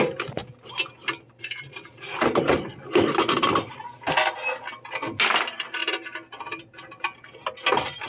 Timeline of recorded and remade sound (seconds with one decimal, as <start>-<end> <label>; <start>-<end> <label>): 0.0-8.1 recorded